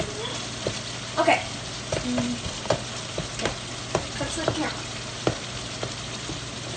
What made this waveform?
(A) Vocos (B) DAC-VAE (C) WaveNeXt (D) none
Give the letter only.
D